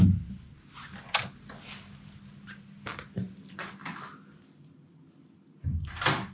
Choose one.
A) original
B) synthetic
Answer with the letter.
A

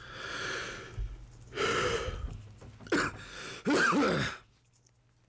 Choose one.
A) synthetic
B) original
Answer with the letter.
B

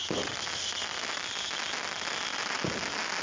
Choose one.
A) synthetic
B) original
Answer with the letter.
B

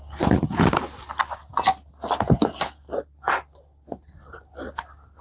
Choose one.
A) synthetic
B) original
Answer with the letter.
B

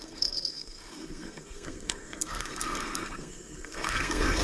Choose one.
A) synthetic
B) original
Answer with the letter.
A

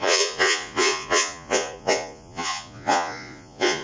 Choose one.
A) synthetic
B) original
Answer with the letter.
A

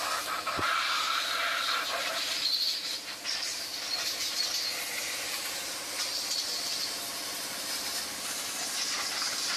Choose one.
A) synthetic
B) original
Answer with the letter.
A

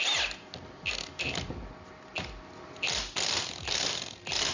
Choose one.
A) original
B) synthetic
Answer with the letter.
A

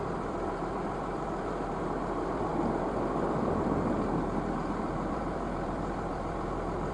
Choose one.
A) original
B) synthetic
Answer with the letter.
B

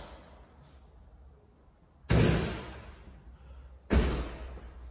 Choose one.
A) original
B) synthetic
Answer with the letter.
A